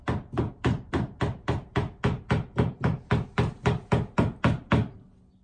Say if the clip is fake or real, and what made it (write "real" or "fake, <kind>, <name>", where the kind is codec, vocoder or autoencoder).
real